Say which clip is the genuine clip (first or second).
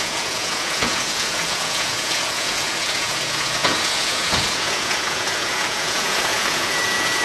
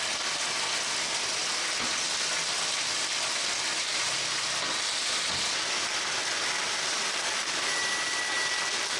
second